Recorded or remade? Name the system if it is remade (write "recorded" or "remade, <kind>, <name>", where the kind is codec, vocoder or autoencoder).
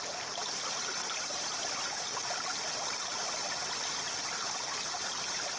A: recorded